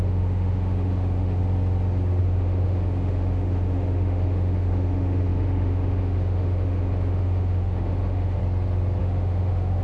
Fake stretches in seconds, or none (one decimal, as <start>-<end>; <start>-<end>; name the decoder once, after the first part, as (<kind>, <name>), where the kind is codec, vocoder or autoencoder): 0.0-1.4 (autoencoder, DAC-VAE); 2.2-8.4; 9.0-9.8